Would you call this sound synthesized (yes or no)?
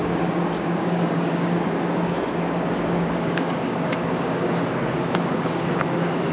yes